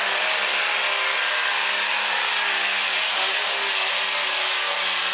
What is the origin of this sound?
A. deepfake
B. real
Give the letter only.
B